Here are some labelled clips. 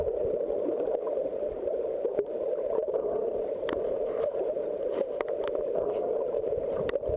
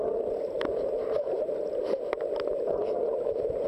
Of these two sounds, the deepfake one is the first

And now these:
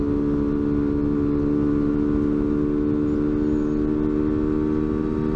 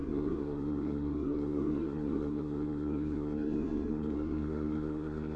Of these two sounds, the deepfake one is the second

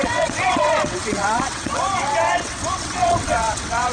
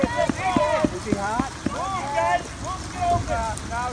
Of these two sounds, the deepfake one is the first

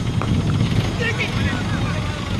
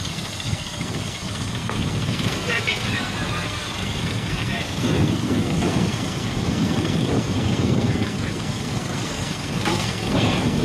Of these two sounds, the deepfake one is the second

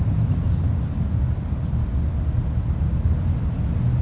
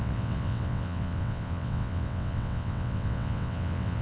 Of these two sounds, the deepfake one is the second